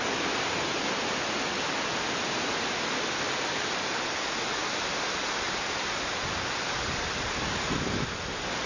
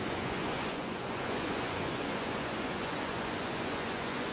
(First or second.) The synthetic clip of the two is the second